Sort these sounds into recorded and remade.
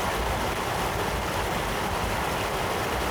recorded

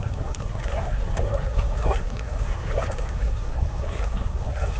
remade